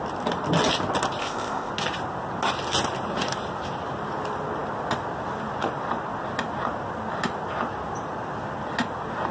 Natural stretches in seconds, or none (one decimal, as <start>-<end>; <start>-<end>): 0.0-1.2; 1.7-9.3